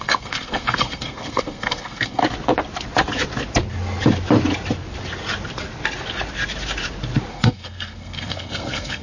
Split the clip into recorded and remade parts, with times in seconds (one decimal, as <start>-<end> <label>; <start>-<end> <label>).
0.0-2.2 remade; 2.2-7.3 recorded; 7.3-9.0 remade